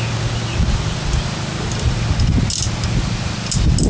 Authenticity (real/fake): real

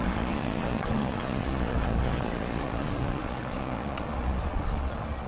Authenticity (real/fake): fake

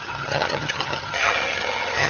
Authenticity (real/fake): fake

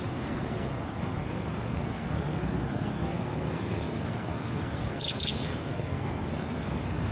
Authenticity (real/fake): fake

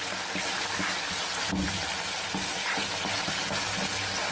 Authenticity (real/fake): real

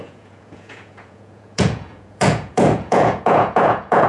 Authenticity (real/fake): fake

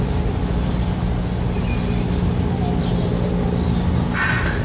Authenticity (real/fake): real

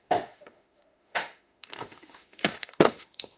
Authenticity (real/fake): fake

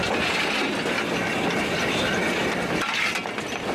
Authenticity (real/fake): real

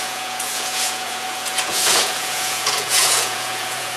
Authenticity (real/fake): fake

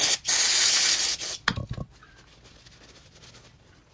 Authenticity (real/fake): real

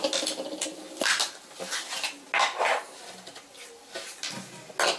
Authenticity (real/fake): real